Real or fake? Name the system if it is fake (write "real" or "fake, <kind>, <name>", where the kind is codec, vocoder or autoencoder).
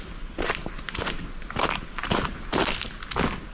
real